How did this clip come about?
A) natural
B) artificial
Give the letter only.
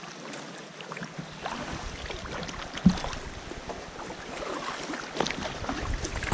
A